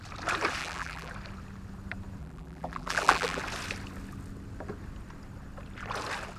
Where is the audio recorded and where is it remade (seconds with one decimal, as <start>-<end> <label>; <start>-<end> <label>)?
0.0-0.6 recorded; 0.6-1.1 remade; 1.1-2.2 recorded; 2.2-3.4 remade; 3.4-6.4 recorded